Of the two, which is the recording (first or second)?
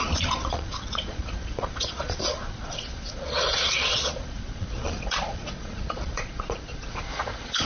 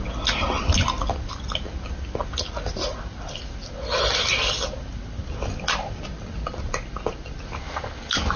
second